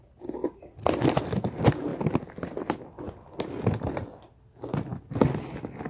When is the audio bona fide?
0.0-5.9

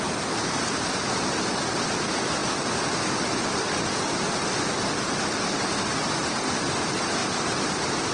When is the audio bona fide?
0.0-8.1

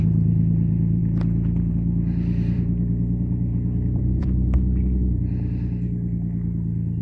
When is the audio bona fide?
1.0-1.7

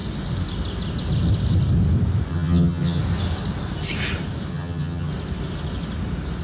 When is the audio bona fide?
0.0-2.3; 3.0-4.5; 5.1-6.4

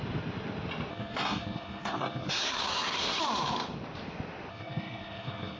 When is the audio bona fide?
0.0-0.9; 3.2-4.5

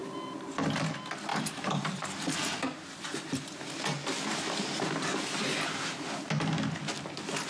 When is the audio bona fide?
0.0-1.3; 3.6-7.5